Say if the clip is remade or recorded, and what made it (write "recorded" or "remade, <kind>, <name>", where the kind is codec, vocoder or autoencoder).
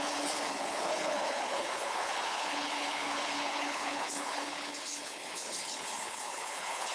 remade, codec, HILCodec